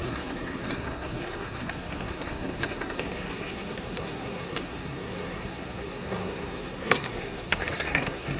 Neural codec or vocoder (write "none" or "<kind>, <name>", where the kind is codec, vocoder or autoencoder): codec, SNAC